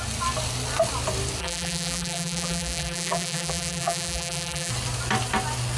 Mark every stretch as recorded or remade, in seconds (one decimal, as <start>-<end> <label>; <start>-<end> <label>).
0.0-1.4 recorded; 1.4-4.7 remade; 4.7-5.8 recorded